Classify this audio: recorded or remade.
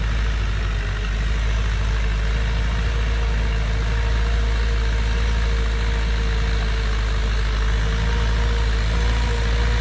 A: recorded